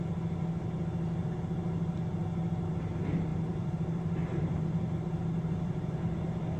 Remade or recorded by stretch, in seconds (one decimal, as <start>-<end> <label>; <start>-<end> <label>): 0.0-3.3 recorded; 3.3-6.0 remade; 6.0-6.6 recorded